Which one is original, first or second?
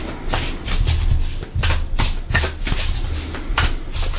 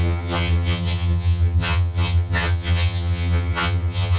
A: first